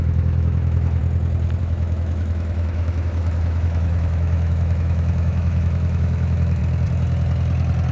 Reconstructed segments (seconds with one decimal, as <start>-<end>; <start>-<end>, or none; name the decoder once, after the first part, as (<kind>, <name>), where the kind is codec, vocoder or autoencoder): 0.0-1.0 (autoencoder, DAC-VAE); 1.6-6.6